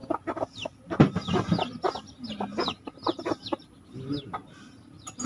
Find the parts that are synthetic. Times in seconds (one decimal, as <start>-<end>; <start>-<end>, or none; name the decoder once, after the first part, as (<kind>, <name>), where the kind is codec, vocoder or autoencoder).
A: none